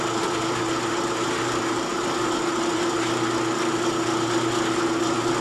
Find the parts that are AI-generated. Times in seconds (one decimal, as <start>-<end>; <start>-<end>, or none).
1.9-2.8